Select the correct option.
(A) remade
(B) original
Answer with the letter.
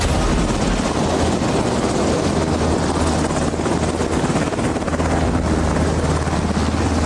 B